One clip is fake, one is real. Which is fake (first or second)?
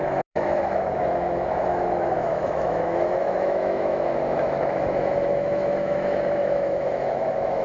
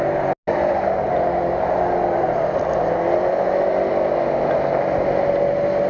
first